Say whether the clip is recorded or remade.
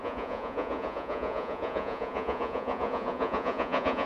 remade